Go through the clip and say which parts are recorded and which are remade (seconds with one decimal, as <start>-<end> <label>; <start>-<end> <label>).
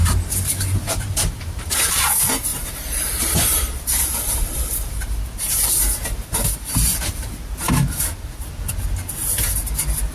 0.0-2.1 remade; 2.1-2.5 recorded; 2.5-7.7 remade; 7.7-10.1 recorded